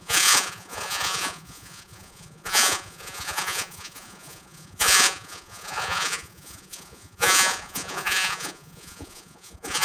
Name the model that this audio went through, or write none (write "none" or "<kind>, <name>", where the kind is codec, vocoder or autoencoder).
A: vocoder, Vocos